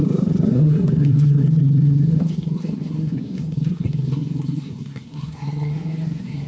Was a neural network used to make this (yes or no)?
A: yes